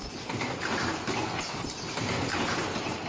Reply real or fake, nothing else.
real